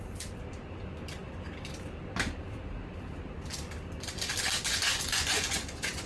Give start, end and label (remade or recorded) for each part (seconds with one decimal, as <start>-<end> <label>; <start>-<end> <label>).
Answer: 0.0-4.7 recorded; 4.7-6.1 remade